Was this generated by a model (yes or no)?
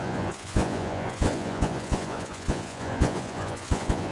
yes